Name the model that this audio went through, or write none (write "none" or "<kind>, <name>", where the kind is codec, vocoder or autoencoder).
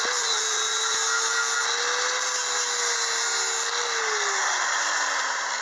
none